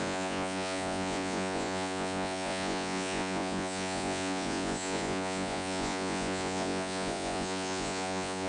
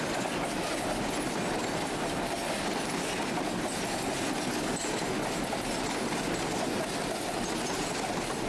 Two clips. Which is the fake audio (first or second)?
first